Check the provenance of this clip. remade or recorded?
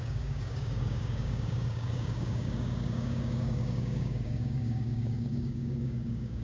remade